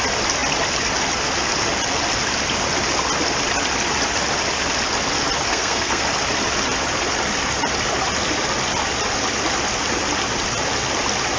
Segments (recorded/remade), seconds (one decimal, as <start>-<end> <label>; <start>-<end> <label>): 0.0-5.5 recorded; 5.5-6.0 remade; 6.0-11.4 recorded